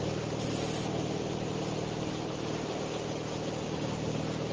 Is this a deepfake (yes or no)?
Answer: no